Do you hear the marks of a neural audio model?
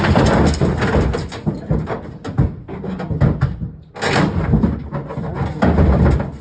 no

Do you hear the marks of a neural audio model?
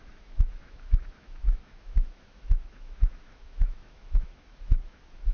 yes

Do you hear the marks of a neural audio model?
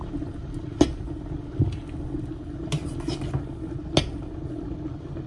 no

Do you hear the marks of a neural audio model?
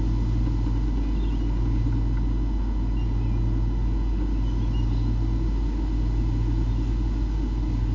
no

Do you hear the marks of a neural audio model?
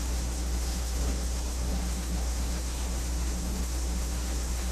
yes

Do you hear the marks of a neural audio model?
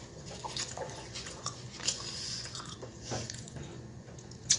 yes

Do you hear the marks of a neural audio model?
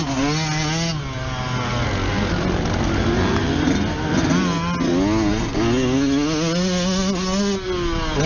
no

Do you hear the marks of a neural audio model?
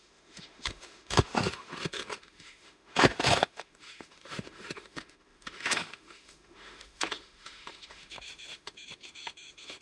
yes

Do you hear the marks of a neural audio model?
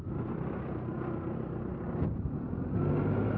no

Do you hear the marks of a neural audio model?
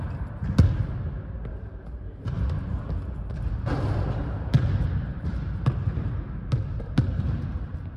no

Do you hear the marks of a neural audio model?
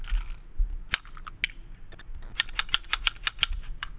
no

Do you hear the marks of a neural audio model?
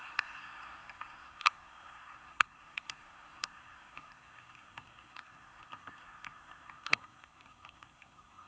yes